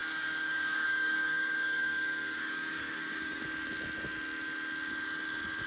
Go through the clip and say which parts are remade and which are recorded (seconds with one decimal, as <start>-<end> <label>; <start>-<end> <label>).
0.0-3.4 remade; 3.4-5.7 recorded

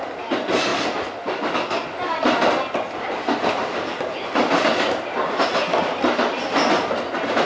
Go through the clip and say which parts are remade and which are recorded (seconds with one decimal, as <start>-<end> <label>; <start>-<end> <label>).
0.0-7.4 recorded

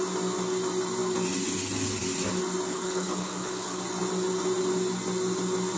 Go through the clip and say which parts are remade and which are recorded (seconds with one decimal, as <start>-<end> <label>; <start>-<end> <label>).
0.0-2.7 recorded; 2.7-3.8 remade; 3.8-5.8 recorded